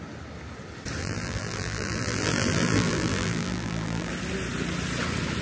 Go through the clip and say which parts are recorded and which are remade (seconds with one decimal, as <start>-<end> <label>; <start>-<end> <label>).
0.0-1.0 recorded; 1.0-4.1 remade; 4.1-5.4 recorded